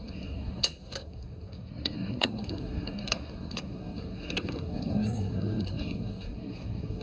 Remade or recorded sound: remade